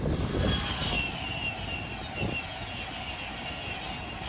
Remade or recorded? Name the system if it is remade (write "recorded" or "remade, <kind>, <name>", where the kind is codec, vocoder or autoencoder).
recorded